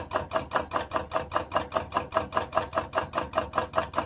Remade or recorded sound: recorded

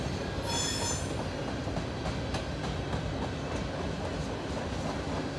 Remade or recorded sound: recorded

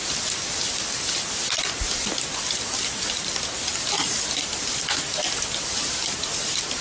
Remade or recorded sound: recorded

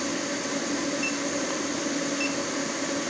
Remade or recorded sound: recorded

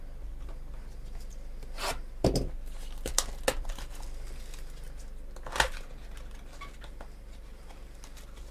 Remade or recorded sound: recorded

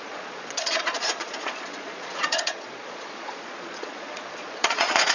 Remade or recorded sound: remade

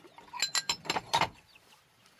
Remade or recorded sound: recorded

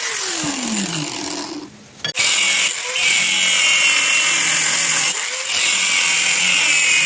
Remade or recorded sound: recorded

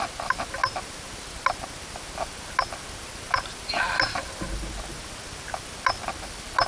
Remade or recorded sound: recorded